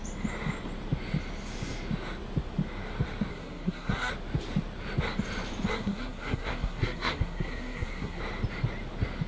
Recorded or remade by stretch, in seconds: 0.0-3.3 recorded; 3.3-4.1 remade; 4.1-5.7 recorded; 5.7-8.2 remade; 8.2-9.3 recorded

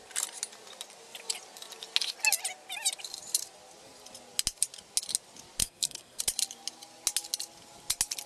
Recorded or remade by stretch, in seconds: 0.0-5.6 recorded; 5.6-6.2 remade; 6.2-8.3 recorded

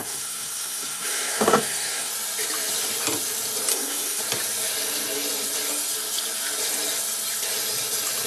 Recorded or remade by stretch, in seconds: 0.0-2.1 remade; 2.1-3.7 recorded; 3.7-4.2 remade; 4.2-8.3 recorded